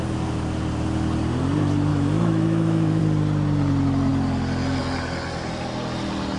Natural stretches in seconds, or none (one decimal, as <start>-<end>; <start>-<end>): 0.0-1.9; 3.0-6.4